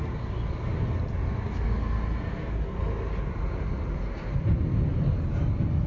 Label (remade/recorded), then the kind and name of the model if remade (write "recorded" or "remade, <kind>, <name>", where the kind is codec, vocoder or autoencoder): recorded